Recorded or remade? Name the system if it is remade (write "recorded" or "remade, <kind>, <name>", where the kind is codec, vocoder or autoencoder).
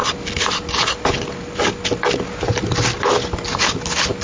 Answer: recorded